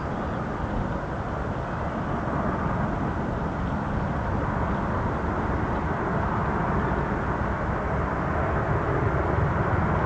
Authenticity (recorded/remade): recorded